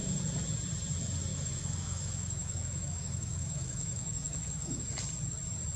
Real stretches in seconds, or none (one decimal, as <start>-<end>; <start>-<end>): 0.0-1.3; 4.8-5.8